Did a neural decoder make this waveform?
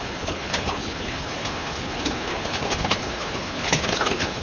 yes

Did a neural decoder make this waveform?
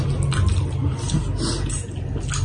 no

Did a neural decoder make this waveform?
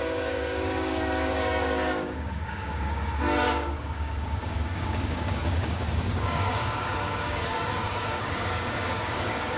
yes